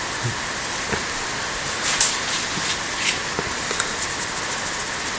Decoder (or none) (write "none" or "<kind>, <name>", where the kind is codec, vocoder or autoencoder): none